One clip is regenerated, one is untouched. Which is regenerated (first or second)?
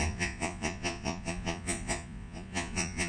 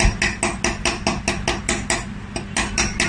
first